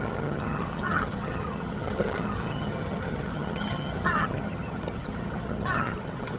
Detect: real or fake fake